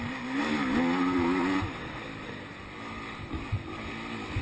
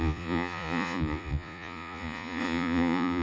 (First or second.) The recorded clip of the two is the first